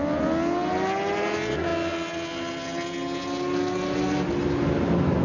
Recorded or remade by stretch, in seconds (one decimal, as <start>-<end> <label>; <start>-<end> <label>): 0.0-5.2 recorded